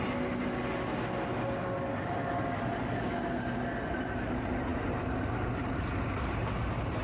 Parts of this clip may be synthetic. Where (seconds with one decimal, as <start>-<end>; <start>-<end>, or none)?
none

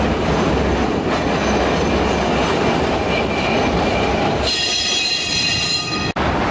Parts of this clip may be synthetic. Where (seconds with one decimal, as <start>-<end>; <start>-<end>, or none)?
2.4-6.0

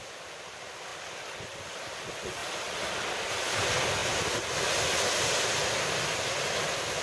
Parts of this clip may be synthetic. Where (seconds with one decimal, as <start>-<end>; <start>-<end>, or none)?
2.4-3.6